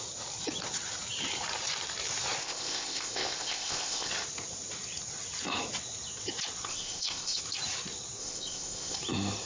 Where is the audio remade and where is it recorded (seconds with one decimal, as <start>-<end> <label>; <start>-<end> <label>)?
0.0-2.4 recorded; 2.4-4.1 remade; 4.1-6.7 recorded; 6.7-7.4 remade; 7.4-8.2 recorded; 8.2-9.0 remade; 9.0-9.5 recorded